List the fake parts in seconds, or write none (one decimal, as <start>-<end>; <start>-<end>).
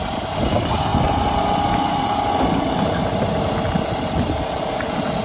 none